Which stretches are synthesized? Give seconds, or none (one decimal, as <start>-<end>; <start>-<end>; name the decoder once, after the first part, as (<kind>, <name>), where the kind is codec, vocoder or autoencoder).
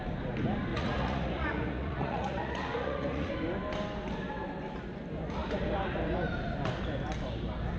0.7-3.3 (vocoder, Vocos)